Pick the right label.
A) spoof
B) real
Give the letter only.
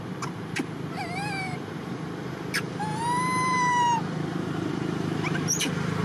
A